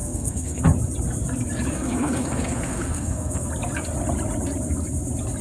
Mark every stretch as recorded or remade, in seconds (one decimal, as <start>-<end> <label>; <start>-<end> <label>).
0.0-0.6 remade; 0.6-1.7 recorded; 1.7-3.5 remade; 3.5-5.4 recorded